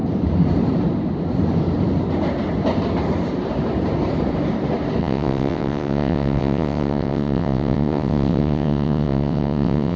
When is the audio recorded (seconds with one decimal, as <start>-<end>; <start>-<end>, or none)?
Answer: 0.0-5.0